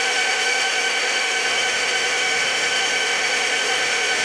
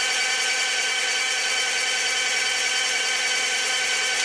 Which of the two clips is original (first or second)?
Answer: second